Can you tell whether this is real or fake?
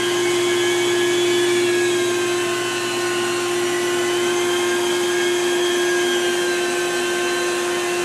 real